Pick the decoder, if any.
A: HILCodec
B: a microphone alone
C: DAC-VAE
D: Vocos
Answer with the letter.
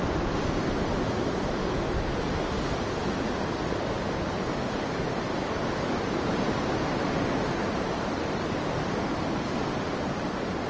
B